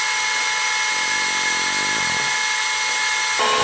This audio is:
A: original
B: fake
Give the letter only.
A